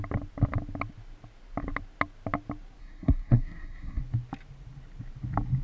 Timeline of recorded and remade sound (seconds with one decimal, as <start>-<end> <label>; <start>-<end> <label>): 0.0-2.8 recorded; 2.8-4.0 remade; 4.0-5.6 recorded